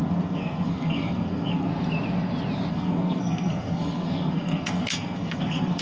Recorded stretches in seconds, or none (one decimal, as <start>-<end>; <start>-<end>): 1.7-2.7

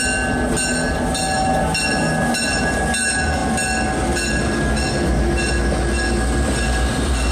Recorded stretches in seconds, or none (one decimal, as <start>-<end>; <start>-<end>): 0.0-7.3